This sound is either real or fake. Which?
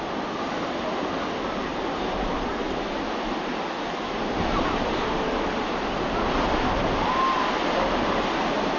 real